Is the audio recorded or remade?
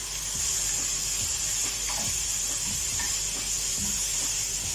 recorded